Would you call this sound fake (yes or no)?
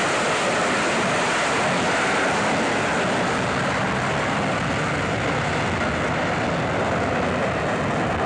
no